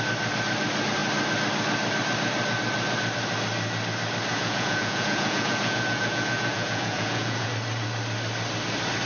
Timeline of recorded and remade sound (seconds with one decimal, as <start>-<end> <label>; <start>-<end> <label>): 0.0-4.3 recorded; 4.3-7.5 remade; 7.5-9.1 recorded